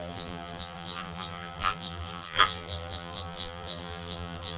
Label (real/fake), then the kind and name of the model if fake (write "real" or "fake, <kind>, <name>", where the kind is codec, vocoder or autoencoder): fake, vocoder, BigVGAN v2